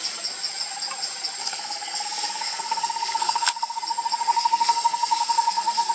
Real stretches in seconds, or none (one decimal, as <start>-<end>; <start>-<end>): 0.0-1.4; 3.8-4.3